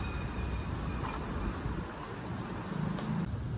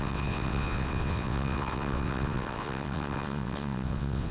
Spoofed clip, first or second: second